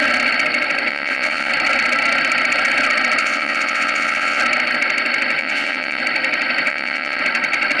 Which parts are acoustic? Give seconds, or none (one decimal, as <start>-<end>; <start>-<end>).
0.0-0.9; 1.5-3.2; 4.4-5.4; 6.0-6.7; 7.2-7.8